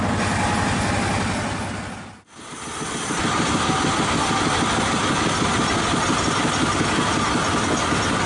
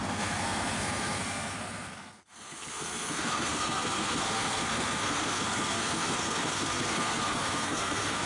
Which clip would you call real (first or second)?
first